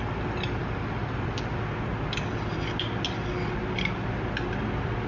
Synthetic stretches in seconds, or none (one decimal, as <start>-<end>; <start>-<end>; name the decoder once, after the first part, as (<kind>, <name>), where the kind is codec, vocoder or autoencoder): none